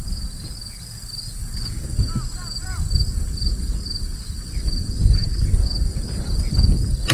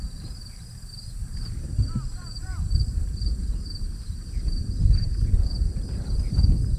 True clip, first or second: first